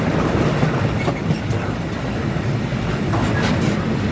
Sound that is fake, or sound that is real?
real